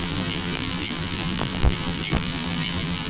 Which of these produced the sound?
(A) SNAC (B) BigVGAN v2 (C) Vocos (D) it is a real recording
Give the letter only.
B